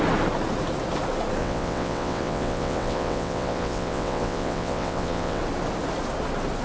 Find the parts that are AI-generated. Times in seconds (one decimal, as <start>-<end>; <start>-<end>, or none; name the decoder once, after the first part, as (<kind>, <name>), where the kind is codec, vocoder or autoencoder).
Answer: 1.4-5.4 (vocoder, WaveNeXt)